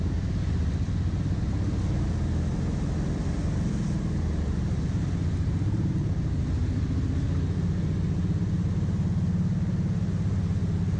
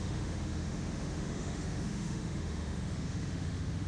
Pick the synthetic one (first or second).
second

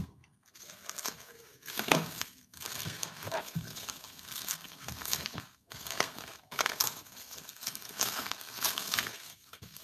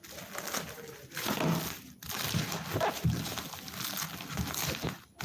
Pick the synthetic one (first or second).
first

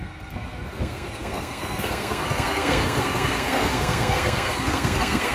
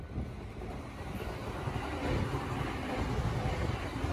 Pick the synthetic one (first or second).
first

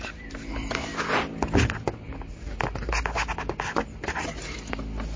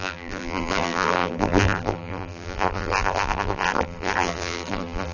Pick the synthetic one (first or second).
second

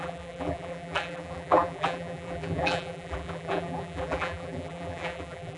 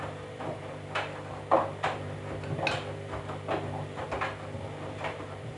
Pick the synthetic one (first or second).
first